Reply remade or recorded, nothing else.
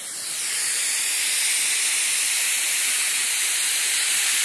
remade